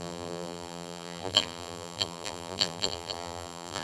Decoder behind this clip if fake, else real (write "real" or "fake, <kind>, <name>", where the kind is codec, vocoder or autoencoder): fake, vocoder, BigVGAN v2